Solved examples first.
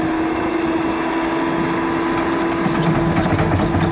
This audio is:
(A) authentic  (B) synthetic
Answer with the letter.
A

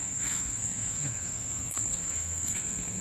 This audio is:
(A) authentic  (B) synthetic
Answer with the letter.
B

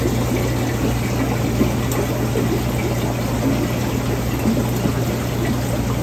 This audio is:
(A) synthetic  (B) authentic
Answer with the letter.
B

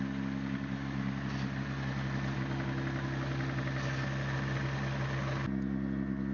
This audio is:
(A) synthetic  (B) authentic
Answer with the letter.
B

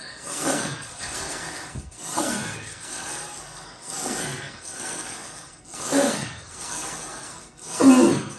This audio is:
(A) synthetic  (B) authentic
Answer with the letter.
A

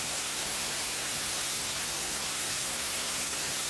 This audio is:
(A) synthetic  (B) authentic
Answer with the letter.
A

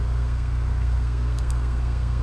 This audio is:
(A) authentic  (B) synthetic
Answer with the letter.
B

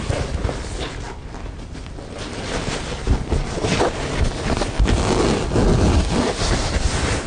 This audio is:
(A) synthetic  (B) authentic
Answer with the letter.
B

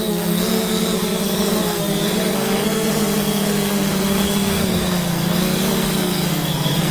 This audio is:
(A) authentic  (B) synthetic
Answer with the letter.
B